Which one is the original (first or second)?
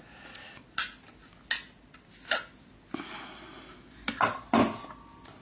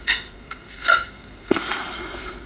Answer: first